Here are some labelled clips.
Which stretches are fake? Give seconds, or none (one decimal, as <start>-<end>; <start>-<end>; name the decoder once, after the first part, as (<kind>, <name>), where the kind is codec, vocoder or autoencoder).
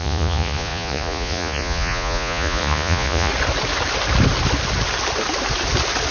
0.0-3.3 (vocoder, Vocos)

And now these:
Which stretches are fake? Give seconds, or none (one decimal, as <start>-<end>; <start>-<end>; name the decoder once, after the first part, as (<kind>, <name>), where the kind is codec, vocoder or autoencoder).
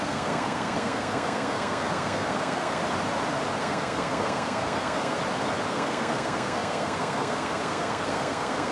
0.0-2.8 (codec, SNAC); 3.6-5.2; 5.7-8.7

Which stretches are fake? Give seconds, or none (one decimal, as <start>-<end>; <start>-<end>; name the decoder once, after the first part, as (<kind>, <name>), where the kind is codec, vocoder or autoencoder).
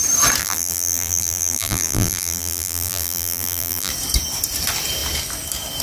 0.4-3.9 (vocoder, BigVGAN v2)